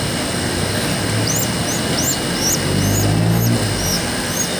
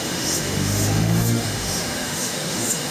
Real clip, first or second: first